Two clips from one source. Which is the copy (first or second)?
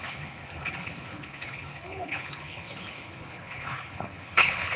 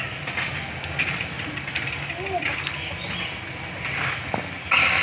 first